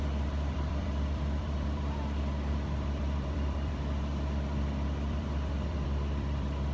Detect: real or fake fake